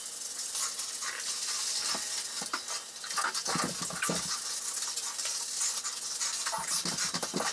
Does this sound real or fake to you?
real